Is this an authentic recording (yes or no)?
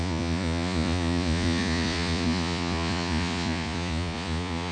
no